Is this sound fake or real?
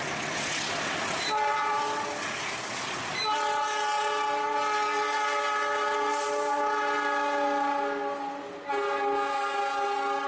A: real